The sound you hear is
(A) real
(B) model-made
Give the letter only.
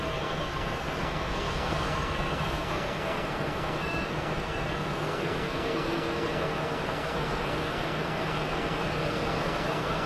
B